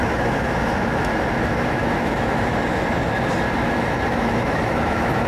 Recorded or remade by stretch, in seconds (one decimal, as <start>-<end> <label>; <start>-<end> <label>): 0.0-1.1 remade; 1.1-1.7 recorded; 1.7-2.5 remade; 2.5-4.1 recorded; 4.1-5.3 remade